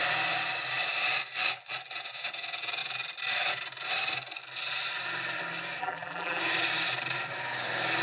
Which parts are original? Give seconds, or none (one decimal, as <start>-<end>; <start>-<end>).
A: 0.0-5.8; 6.4-8.0